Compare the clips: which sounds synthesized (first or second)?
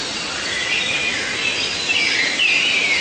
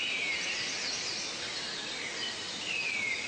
first